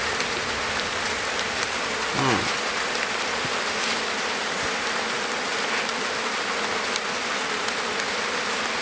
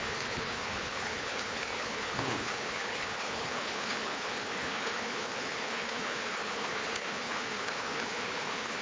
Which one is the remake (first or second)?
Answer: second